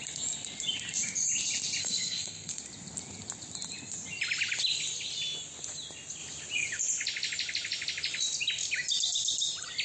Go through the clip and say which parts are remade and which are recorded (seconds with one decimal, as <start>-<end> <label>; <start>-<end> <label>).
0.0-1.8 recorded; 1.8-2.5 remade; 2.5-9.8 recorded